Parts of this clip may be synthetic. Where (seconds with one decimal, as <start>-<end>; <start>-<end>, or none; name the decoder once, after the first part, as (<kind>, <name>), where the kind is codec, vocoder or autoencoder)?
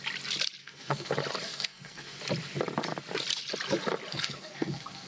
0.6-1.1 (codec, SNAC); 1.5-2.2; 4.1-5.1